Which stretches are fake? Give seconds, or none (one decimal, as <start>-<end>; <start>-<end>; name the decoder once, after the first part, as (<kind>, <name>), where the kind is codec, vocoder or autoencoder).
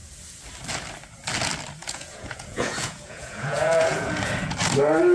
1.8-4.1 (vocoder, Vocos)